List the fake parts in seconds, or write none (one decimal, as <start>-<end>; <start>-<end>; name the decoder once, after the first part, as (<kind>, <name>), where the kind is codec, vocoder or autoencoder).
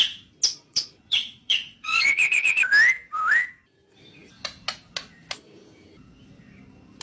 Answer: 0.5-2.6 (vocoder, Vocos)